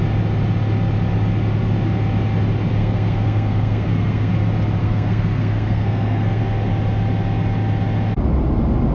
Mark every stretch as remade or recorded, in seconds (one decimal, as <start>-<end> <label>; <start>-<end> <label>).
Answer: 0.0-2.7 recorded; 2.7-4.3 remade; 4.3-4.8 recorded; 4.8-6.4 remade; 6.4-8.9 recorded